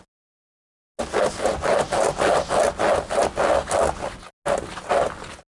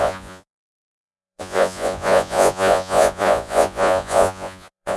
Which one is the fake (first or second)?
second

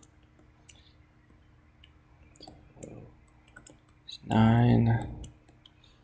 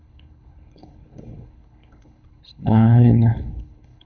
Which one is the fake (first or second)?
second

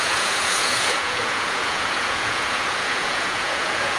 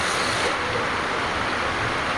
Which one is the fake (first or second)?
first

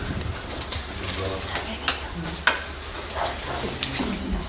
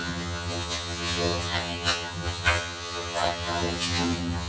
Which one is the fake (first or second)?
second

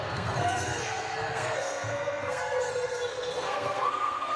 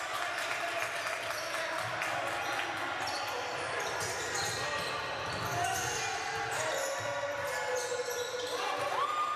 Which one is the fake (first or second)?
first